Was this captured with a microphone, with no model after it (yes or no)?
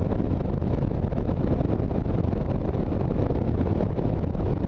no